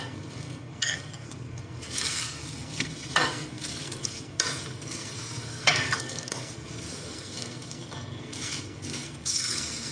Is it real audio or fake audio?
fake